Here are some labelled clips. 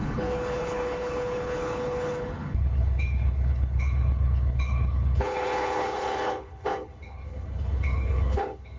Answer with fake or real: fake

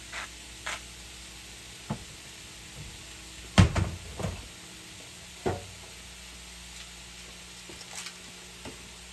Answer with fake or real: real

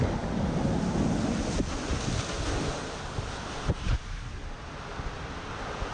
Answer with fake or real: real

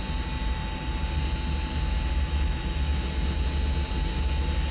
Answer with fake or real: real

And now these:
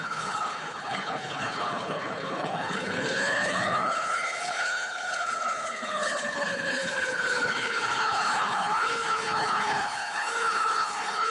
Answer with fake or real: fake